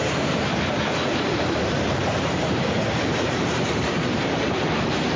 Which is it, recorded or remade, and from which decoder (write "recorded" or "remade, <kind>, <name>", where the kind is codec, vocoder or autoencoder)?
remade, vocoder, BigVGAN v2